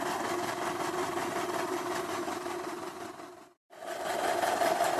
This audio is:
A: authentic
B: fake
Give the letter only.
A